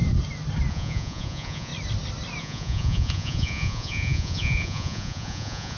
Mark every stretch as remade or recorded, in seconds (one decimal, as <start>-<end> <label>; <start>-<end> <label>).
0.0-0.7 recorded; 0.7-1.7 remade; 1.7-2.4 recorded; 2.4-5.8 remade